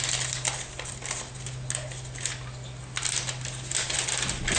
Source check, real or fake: real